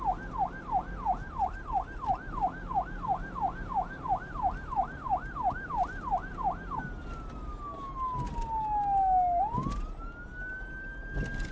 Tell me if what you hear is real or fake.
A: real